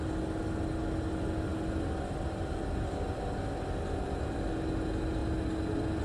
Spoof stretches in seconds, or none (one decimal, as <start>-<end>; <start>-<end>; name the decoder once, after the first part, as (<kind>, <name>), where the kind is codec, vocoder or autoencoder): none